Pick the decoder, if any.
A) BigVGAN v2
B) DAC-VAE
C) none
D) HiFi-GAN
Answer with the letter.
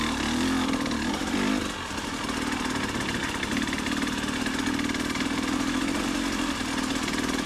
C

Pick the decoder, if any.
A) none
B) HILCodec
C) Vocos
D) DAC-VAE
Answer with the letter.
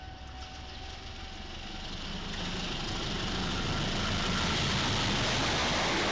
A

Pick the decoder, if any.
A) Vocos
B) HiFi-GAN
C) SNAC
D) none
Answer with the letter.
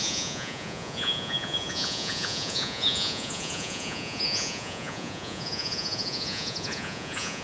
A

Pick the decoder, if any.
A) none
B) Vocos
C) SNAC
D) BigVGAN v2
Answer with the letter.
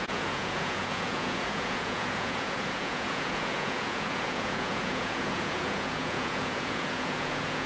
B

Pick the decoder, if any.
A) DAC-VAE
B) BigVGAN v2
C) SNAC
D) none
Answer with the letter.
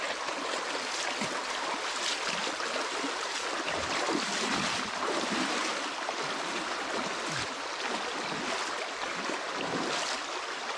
D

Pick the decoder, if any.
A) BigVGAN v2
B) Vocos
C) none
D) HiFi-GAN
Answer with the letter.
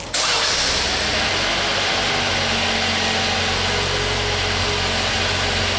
C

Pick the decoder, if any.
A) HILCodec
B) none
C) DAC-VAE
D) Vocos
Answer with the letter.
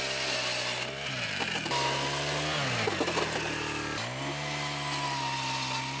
B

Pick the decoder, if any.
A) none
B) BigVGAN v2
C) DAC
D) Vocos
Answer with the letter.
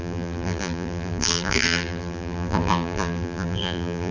B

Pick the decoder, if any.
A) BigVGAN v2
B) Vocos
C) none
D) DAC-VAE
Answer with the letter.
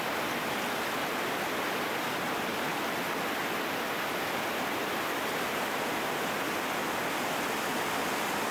C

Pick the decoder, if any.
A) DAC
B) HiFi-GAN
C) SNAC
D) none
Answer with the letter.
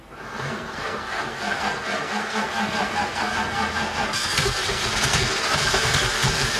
C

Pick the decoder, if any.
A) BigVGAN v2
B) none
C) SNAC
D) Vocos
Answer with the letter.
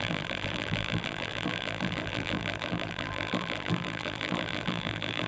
A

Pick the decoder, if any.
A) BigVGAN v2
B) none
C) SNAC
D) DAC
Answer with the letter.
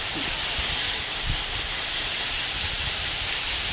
B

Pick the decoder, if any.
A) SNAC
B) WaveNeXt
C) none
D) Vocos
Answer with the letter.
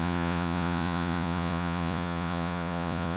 D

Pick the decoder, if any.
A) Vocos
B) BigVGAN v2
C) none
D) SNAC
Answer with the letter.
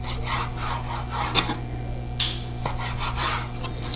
C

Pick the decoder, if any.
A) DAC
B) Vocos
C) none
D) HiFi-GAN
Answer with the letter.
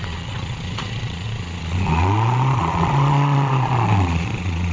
B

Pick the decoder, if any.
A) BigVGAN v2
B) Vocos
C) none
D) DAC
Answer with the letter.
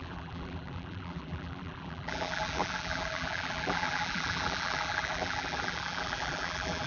A